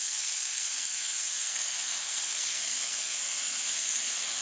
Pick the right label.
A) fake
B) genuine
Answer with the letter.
A